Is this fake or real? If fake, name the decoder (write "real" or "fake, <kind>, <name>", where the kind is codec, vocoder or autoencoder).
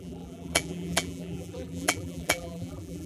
fake, vocoder, BigVGAN v2